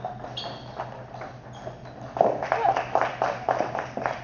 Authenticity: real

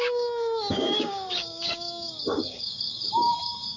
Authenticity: fake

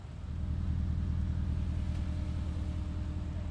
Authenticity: real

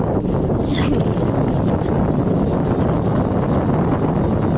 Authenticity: real